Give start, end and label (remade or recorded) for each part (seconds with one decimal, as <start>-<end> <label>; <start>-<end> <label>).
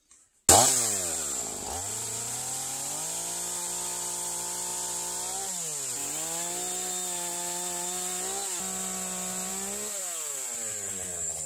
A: 0.0-11.5 recorded